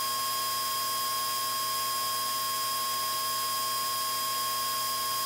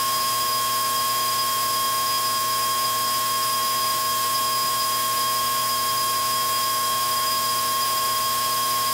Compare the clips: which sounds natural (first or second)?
first